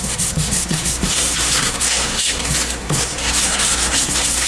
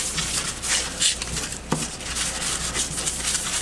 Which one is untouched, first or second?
second